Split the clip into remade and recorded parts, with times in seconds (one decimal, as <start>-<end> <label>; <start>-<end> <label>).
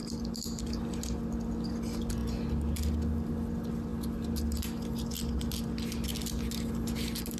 0.0-7.4 recorded